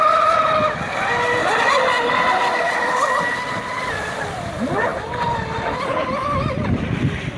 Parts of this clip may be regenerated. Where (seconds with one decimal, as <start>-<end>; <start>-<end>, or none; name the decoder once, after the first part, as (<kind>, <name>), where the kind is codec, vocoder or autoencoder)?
none